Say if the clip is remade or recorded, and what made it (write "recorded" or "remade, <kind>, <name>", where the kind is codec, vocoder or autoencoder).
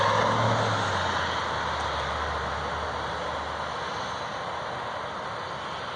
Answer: recorded